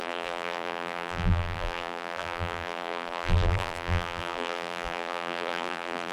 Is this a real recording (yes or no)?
no